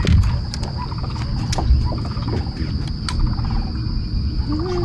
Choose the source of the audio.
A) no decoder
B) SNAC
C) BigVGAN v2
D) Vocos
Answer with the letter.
A